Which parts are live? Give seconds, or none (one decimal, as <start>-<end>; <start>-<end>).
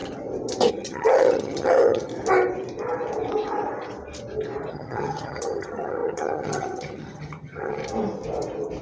0.0-0.7; 2.1-4.7; 7.8-8.8